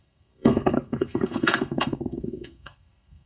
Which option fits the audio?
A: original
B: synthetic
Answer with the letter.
B